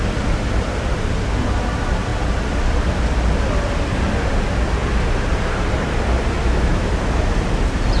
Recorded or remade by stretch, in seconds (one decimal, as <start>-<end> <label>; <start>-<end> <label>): 0.0-6.4 recorded; 6.4-6.9 remade; 6.9-8.0 recorded